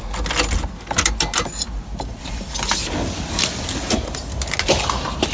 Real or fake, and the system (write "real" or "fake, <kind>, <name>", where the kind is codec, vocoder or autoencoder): real